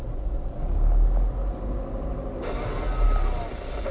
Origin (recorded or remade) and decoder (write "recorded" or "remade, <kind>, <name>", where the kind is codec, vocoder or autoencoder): recorded